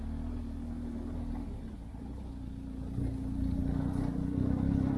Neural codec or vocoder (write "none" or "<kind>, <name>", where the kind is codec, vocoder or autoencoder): none